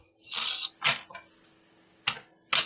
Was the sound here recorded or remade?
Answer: recorded